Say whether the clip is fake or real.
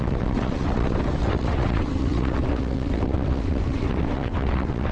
fake